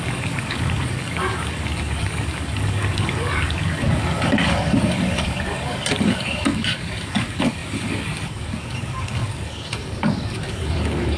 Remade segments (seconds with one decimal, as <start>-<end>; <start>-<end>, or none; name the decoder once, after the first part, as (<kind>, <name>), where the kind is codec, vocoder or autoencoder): 0.0-11.2 (codec, DAC)